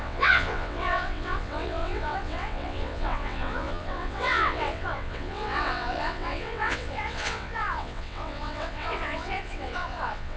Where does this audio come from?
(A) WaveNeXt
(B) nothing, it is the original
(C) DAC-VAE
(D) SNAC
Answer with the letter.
A